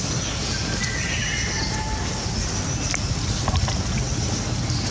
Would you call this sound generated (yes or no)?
no